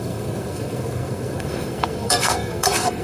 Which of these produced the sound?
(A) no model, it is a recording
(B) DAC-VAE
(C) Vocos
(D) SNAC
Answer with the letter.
D